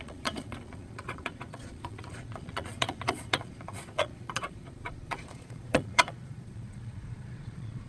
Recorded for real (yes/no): no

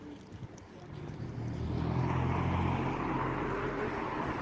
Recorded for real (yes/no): yes